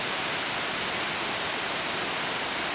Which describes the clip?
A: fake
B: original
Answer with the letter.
B